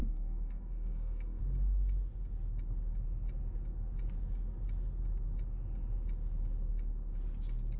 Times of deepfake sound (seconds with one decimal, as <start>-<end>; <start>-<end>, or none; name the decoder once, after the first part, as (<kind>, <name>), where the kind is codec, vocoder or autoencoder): 0.0-1.4 (codec, SNAC)